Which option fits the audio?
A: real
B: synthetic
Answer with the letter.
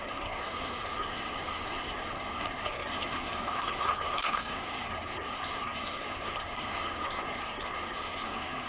B